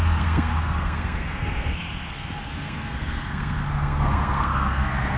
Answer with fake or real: fake